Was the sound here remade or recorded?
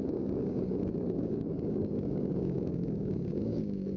remade